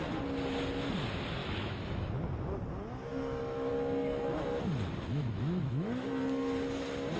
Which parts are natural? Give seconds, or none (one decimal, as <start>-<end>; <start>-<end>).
0.0-1.4; 2.1-3.1; 3.7-5.1; 6.1-7.2